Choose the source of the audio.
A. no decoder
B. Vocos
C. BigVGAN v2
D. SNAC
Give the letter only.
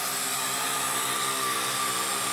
A